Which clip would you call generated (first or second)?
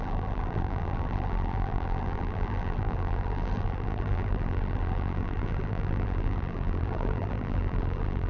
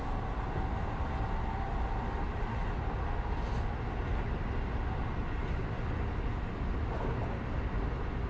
first